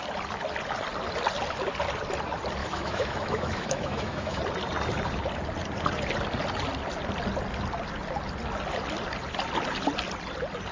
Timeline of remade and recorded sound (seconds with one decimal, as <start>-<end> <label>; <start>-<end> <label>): 0.0-2.6 recorded; 2.6-4.4 remade; 4.4-10.7 recorded